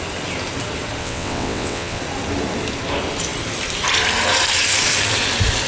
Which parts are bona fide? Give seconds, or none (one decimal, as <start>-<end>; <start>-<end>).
0.0-1.0; 2.0-5.7